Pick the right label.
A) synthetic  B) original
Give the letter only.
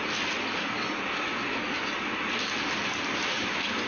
B